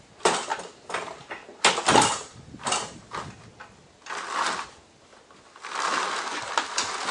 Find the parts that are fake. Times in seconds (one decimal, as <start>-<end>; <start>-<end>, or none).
none

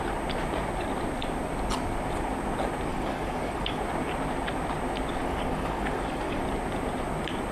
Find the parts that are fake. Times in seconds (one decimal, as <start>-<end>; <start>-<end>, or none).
2.9-3.8; 5.2-6.4

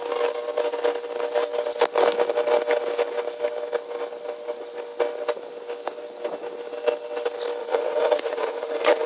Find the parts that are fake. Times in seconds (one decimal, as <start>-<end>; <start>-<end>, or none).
7.6-9.1

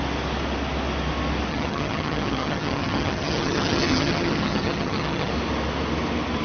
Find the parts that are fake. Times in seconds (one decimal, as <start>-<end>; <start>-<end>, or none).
1.5-5.3

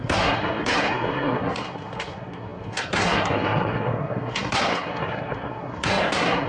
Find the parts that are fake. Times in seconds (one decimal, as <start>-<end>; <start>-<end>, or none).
0.0-6.5

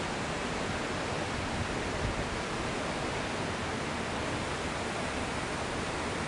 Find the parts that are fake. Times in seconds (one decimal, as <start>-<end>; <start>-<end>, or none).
0.4-1.4

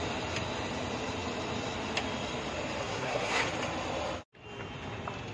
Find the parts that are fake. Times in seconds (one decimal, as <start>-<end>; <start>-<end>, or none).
2.8-3.4